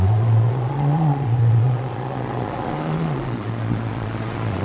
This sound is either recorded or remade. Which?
remade